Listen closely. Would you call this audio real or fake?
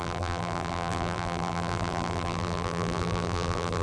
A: fake